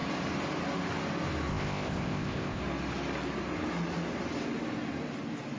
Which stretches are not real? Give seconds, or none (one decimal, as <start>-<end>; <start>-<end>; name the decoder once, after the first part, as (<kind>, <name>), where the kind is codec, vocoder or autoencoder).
1.5-2.6 (codec, ZipCodec)